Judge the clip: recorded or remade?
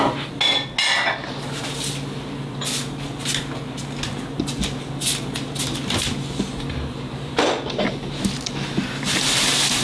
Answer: recorded